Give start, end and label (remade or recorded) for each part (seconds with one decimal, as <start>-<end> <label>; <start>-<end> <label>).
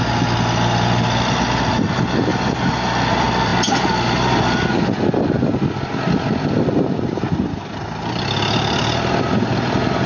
0.0-2.3 recorded; 2.3-2.9 remade; 2.9-10.1 recorded